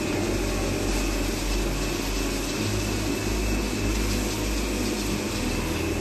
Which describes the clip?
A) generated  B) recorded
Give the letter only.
B